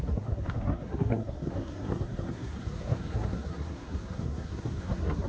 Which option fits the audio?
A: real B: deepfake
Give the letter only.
B